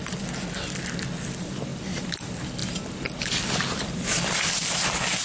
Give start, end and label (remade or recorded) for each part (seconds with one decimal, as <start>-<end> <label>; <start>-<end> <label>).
0.0-2.6 recorded; 2.6-4.7 remade; 4.7-5.2 recorded